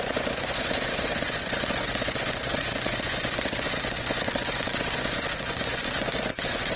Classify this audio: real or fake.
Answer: fake